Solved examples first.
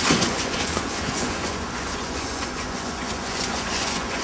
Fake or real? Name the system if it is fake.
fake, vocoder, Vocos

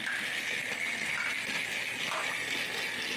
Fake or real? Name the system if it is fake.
real